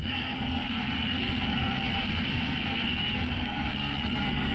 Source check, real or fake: fake